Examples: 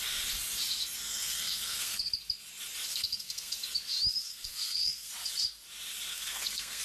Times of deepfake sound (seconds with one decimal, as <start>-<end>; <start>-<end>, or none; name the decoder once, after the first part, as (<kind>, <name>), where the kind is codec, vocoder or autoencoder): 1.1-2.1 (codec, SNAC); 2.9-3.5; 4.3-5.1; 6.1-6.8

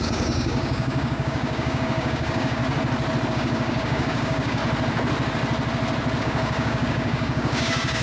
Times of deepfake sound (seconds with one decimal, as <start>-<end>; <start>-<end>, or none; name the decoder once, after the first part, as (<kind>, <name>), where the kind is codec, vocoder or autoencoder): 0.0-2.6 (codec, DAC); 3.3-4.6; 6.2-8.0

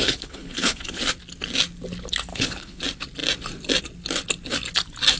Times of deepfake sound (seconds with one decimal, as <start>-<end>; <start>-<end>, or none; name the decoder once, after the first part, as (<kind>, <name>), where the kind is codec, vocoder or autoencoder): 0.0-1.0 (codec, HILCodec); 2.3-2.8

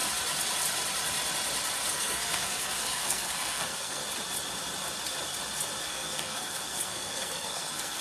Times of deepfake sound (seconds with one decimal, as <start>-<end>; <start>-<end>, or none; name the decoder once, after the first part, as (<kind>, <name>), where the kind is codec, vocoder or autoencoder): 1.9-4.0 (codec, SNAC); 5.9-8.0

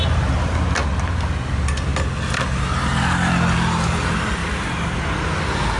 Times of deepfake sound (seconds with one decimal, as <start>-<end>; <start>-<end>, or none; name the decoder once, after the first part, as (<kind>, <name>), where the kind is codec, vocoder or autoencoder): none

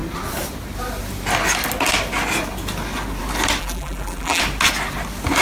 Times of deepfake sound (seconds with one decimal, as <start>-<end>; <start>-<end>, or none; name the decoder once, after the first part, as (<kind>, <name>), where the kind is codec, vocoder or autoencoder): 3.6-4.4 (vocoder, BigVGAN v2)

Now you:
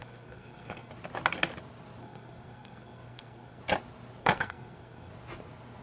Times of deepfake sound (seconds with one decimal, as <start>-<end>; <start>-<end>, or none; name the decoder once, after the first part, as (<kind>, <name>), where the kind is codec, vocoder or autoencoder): 0.0-0.9 (codec, SNAC); 2.0-3.6; 4.2-5.1

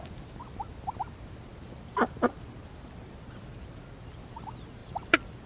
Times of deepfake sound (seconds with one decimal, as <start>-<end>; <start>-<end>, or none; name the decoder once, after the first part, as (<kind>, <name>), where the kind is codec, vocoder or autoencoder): none